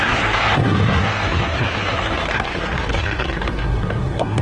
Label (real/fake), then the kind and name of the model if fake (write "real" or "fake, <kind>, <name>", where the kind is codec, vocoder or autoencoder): fake, codec, SNAC